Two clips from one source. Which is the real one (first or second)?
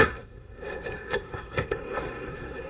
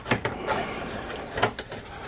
second